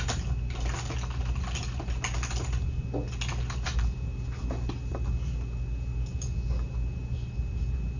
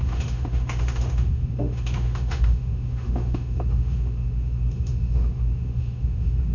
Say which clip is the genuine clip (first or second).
first